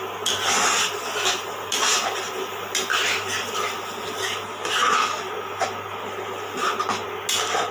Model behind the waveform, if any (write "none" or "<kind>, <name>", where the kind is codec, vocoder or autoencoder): none